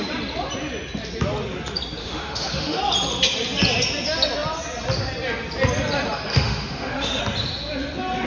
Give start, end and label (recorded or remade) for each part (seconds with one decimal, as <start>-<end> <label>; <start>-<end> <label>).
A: 0.0-2.0 recorded; 2.0-2.8 remade; 2.8-6.3 recorded; 6.3-7.2 remade; 7.2-8.3 recorded

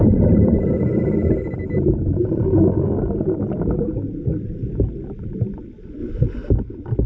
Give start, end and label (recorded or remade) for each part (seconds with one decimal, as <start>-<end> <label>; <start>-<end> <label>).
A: 0.0-7.1 recorded